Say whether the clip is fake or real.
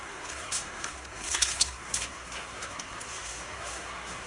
fake